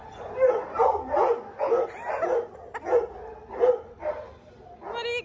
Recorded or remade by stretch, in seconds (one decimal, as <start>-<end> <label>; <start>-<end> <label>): 0.0-5.2 recorded